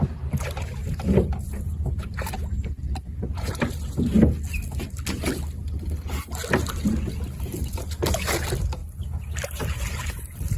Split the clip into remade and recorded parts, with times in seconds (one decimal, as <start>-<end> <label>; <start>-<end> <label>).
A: 0.0-0.8 recorded; 0.8-3.7 remade; 3.7-8.8 recorded; 8.8-10.1 remade; 10.1-10.6 recorded

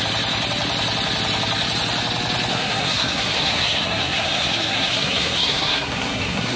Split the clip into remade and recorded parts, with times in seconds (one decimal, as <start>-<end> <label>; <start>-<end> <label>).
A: 0.0-2.5 recorded; 2.5-6.6 remade

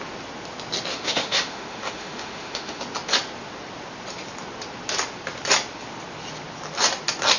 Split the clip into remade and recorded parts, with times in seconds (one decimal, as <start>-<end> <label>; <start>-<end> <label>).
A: 0.0-0.9 recorded; 0.9-2.8 remade; 2.8-7.4 recorded

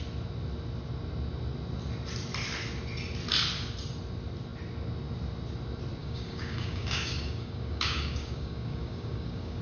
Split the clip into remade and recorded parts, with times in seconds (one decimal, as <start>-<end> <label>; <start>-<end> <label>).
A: 0.0-6.0 recorded; 6.0-9.6 remade

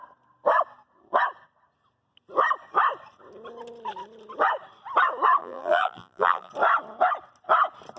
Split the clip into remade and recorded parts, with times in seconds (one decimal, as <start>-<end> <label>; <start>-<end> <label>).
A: 0.0-5.4 recorded; 5.4-6.5 remade; 6.5-8.0 recorded

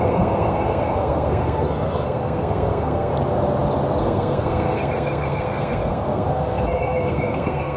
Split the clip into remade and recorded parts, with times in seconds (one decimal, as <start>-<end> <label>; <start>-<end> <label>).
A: 0.0-3.1 remade; 3.1-4.0 recorded; 4.0-7.8 remade

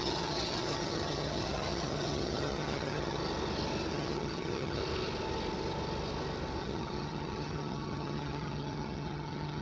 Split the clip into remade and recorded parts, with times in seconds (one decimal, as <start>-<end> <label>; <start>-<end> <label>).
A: 0.0-3.2 remade; 3.2-3.9 recorded; 3.9-4.8 remade; 4.8-6.6 recorded; 6.6-9.6 remade

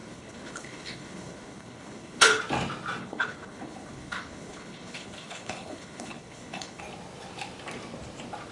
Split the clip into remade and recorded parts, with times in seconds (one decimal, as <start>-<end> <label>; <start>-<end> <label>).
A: 0.0-2.4 remade; 2.4-3.0 recorded; 3.0-6.8 remade; 6.8-8.5 recorded